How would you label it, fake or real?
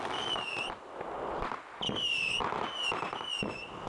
real